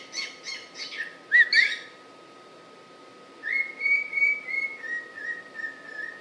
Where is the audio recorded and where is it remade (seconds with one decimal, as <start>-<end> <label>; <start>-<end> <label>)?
0.0-6.2 recorded